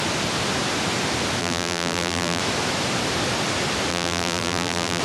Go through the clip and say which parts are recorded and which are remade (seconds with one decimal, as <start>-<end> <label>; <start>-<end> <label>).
0.0-1.4 recorded; 1.4-2.4 remade; 2.4-3.9 recorded; 3.9-5.0 remade